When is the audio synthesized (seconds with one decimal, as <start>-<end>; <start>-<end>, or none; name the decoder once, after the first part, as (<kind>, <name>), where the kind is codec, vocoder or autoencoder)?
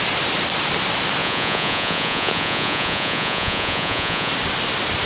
1.2-4.3 (vocoder, Vocos)